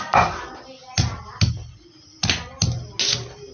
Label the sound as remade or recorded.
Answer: recorded